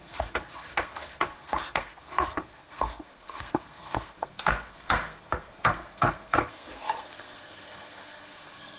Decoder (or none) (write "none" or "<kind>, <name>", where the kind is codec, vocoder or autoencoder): codec, SNAC